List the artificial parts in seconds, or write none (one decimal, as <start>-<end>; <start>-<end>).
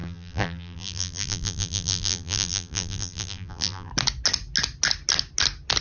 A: 0.0-3.9